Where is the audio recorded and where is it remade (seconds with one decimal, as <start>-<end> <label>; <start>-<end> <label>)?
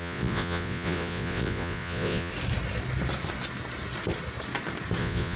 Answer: 0.0-2.3 remade; 2.3-5.0 recorded; 5.0-5.4 remade